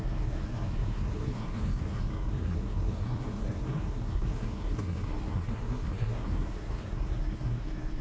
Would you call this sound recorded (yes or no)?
no